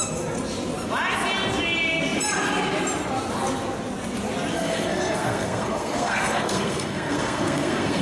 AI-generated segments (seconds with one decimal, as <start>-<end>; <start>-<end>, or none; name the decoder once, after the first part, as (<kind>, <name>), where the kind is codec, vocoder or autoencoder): 4.5-8.0 (codec, SNAC)